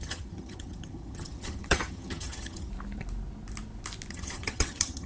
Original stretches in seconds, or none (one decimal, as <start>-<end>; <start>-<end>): 2.7-4.1